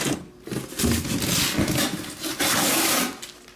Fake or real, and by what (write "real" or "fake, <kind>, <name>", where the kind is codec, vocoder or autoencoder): real